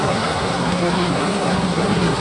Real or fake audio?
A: fake